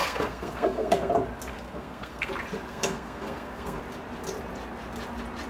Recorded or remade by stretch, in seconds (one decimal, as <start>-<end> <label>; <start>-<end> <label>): 0.0-1.1 remade; 1.1-1.5 recorded; 1.5-2.3 remade; 2.3-2.7 recorded; 2.7-3.8 remade; 3.8-5.5 recorded